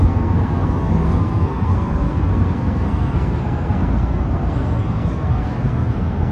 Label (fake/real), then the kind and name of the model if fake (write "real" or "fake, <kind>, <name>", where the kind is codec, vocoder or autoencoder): fake, codec, SNAC